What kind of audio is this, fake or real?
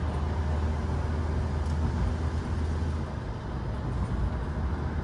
real